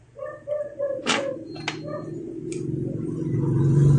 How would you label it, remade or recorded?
recorded